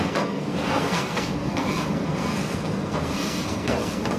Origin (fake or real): fake